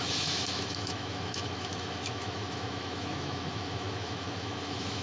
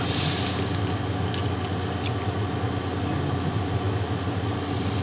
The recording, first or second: second